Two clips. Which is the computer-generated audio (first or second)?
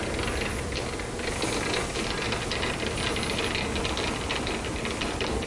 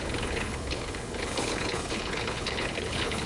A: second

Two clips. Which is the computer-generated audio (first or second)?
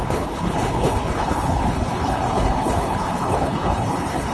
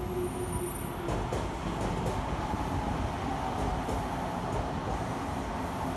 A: first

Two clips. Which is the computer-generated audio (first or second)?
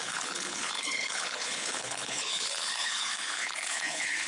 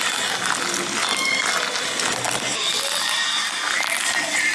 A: first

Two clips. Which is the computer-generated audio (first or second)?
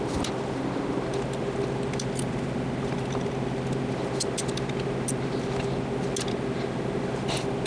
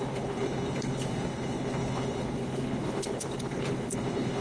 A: second